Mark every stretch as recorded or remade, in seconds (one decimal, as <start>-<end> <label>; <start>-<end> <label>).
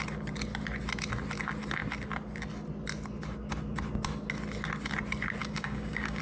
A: 0.0-5.4 recorded; 5.4-6.2 remade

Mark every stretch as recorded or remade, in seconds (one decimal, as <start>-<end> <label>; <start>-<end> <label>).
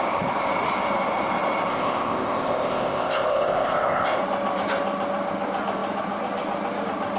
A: 0.0-1.7 recorded; 1.7-4.2 remade; 4.2-7.2 recorded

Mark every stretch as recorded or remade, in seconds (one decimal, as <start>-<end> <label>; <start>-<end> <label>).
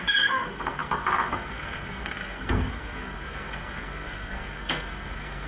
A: 0.0-5.5 remade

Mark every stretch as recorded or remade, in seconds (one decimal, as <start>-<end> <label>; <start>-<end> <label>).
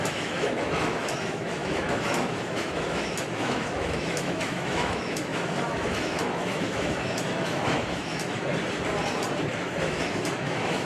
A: 0.0-8.5 remade; 8.5-9.5 recorded; 9.5-10.9 remade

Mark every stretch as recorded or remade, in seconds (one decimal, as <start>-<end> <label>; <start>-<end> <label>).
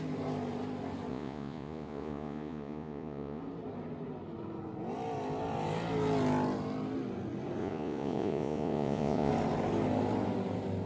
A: 0.0-1.1 recorded; 1.1-3.4 remade; 3.4-7.6 recorded; 7.6-9.3 remade; 9.3-10.9 recorded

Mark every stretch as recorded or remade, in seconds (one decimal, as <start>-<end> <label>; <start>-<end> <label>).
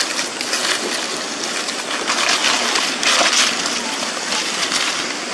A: 0.0-5.3 recorded